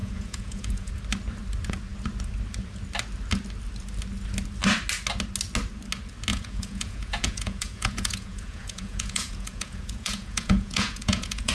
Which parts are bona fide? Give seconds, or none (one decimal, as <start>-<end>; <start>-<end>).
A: 0.9-6.3